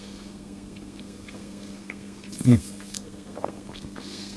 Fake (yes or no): yes